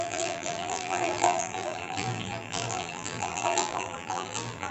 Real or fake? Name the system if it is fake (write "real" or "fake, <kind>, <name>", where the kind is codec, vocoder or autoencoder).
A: fake, vocoder, BigVGAN v2